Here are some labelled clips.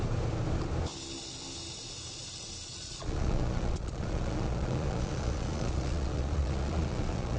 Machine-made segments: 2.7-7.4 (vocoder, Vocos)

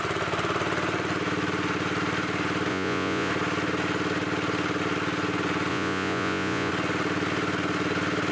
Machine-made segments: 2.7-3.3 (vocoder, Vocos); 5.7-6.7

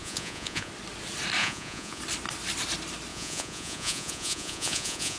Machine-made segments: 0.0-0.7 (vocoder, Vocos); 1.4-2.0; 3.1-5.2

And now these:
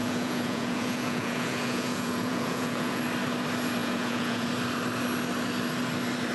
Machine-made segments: 0.0-3.0 (vocoder, Vocos); 3.8-4.5

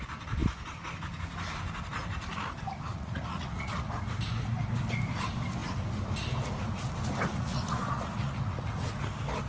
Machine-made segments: 2.9-3.9 (vocoder, Vocos); 7.3-8.9

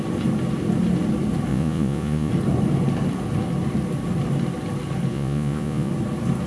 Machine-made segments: 1.5-2.3 (vocoder, Vocos); 5.1-5.9